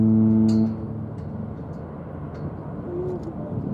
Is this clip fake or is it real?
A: real